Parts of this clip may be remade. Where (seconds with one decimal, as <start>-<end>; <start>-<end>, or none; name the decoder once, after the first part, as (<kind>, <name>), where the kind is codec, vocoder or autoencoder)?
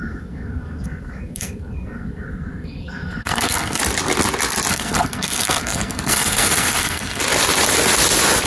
0.0-3.8 (codec, SNAC); 4.7-7.2